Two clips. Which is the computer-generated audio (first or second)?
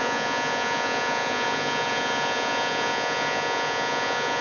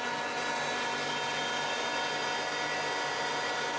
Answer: first